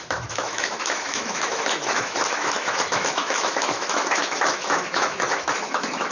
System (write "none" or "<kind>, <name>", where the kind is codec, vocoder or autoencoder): autoencoder, DAC-VAE